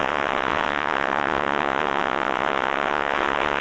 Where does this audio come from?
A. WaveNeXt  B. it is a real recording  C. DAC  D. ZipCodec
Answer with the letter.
A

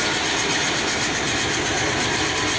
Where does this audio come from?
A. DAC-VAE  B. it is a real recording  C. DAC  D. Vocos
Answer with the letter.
B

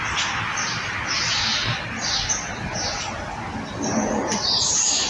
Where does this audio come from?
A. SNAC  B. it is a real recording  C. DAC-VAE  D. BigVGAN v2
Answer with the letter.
B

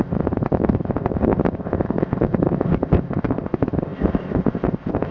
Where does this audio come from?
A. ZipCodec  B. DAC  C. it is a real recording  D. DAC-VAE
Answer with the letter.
A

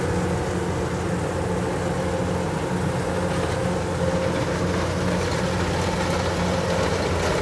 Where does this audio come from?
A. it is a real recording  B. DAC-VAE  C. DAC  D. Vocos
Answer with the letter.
A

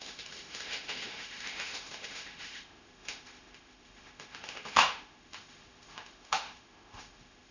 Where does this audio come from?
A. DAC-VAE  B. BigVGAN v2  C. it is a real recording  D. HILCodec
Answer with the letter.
A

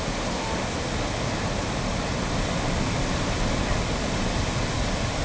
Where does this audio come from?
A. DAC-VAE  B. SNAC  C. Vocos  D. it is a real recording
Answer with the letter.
D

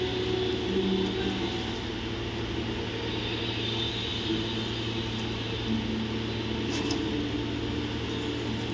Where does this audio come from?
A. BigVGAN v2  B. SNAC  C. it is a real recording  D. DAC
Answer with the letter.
C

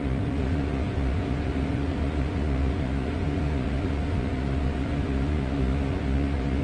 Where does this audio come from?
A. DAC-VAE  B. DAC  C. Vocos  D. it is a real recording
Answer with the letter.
C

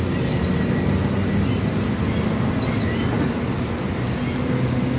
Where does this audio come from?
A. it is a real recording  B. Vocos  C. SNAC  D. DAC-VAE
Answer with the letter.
A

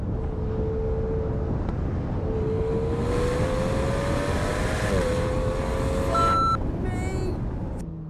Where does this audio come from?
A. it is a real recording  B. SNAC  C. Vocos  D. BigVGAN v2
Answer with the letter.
A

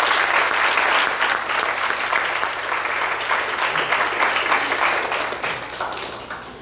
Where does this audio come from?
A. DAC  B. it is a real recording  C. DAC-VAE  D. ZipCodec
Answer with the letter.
B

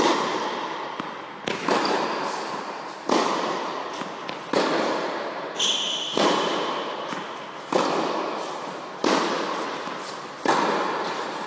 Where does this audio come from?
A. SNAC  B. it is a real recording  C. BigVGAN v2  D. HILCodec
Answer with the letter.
B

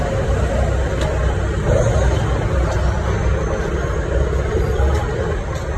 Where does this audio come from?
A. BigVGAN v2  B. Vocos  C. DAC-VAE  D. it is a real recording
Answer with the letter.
D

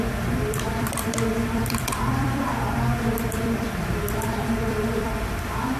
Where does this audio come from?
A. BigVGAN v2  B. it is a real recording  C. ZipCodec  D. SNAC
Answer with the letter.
A